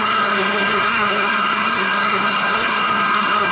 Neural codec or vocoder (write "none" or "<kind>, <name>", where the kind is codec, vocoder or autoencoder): codec, SNAC